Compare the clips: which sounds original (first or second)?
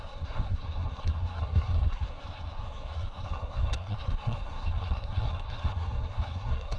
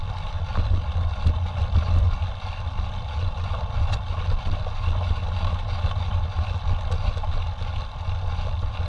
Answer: second